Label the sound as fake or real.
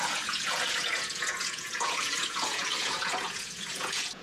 fake